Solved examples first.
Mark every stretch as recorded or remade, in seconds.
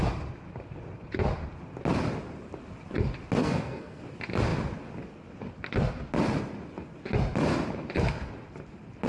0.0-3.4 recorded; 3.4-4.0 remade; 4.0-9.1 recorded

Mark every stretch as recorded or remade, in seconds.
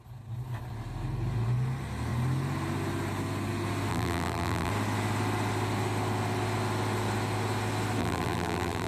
0.0-3.9 recorded; 3.9-4.7 remade; 4.7-8.0 recorded; 8.0-8.9 remade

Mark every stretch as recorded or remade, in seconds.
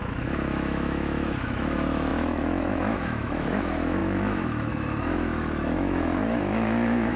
0.0-7.2 remade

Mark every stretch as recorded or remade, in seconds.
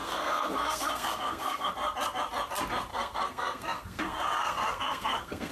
0.0-1.7 remade; 1.7-2.9 recorded; 2.9-5.5 remade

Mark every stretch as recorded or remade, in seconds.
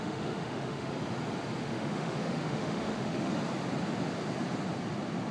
0.0-0.9 remade; 0.9-1.6 recorded; 1.6-3.3 remade; 3.3-5.3 recorded